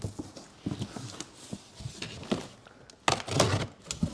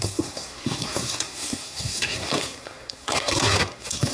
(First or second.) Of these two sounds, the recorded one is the first